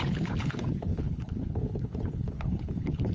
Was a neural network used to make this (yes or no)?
yes